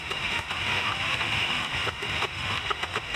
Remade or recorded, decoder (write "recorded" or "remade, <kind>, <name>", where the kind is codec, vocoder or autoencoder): remade, autoencoder, DAC-VAE